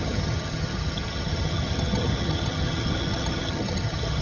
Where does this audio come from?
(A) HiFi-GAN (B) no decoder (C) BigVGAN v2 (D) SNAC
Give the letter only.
A